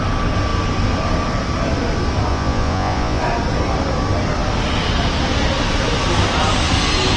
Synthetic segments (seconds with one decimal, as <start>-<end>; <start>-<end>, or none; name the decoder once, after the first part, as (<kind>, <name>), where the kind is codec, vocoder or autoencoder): 2.3-3.2 (vocoder, Vocos)